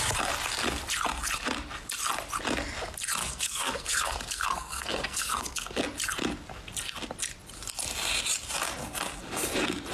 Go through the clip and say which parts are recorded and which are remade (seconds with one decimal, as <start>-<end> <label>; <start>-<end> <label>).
0.0-3.2 recorded; 3.2-5.8 remade; 5.8-9.9 recorded